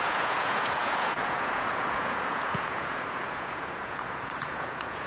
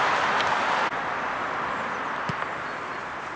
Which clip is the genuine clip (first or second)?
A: second